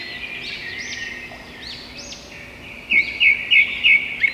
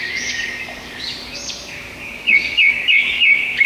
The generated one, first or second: second